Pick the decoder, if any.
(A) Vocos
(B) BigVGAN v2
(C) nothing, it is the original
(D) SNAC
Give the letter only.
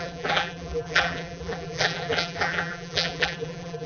B